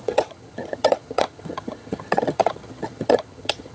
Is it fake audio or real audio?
fake